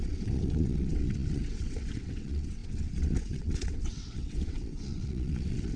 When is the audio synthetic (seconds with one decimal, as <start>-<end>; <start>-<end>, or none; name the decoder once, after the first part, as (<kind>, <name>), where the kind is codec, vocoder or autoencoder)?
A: 0.0-5.8 (vocoder, WaveNeXt)